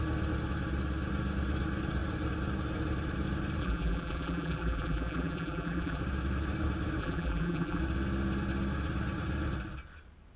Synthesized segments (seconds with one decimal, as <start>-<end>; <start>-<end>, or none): 3.6-6.0; 7.0-7.8